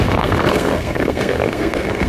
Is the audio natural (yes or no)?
no